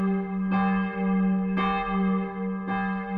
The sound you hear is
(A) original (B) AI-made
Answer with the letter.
A